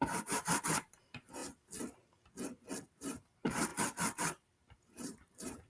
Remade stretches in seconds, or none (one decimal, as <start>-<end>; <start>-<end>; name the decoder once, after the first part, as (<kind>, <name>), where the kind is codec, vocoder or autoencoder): 0.0-1.4 (vocoder, BigVGAN v2); 2.9-3.7; 4.2-5.7